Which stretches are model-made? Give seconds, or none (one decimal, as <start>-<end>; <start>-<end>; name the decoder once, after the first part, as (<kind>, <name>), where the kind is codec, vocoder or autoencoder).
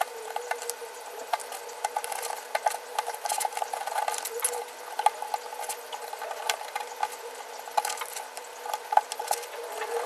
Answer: 0.8-1.4 (vocoder, BigVGAN v2); 2.9-4.0